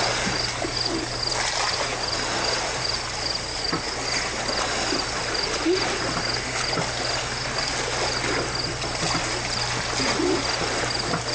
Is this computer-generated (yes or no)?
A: no